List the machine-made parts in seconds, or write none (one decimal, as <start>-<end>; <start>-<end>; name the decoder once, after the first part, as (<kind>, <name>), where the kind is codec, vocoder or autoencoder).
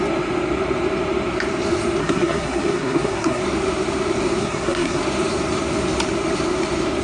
2.0-3.4 (codec, SNAC); 4.4-5.0